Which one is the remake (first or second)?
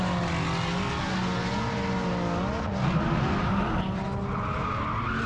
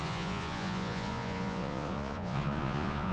second